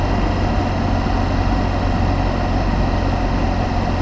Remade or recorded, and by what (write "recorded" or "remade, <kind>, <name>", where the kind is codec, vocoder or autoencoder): recorded